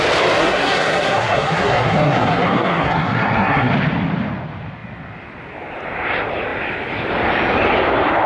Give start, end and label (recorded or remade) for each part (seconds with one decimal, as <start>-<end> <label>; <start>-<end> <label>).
0.0-0.4 recorded; 0.4-3.7 remade; 3.7-8.3 recorded